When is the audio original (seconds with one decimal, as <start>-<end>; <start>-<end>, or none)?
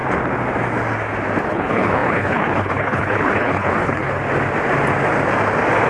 0.0-1.4; 4.2-5.9